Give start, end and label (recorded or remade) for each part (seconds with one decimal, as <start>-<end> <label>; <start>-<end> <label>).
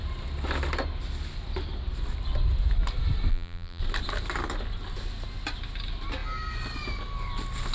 0.0-3.3 recorded; 3.3-3.8 remade; 3.8-7.7 recorded